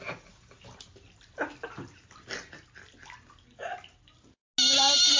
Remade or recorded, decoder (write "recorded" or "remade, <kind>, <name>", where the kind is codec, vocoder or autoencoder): recorded